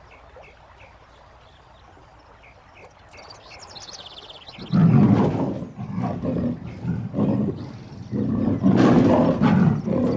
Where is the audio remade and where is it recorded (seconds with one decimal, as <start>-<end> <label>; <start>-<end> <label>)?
0.0-10.2 recorded